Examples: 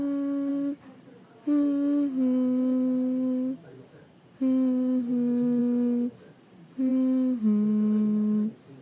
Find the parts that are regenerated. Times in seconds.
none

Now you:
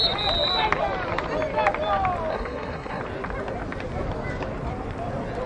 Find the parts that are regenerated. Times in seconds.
2.3-3.0

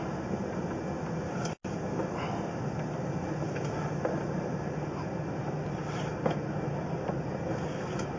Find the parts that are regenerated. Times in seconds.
none

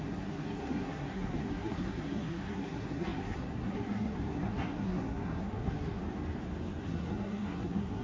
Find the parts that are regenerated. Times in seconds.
0.0-6.0; 6.8-8.0

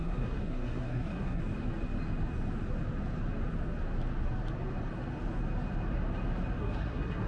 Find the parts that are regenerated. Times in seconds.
0.0-1.4; 6.6-7.3

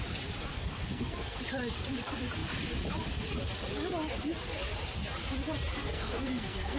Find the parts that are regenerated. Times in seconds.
0.5-1.4; 5.8-6.8

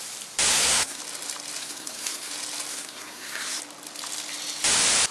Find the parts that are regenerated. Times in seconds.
0.5-1.0; 1.6-2.3; 2.7-3.6

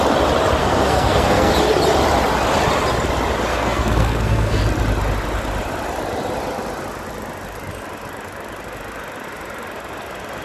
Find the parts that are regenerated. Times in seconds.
0.6-1.5; 3.5-4.6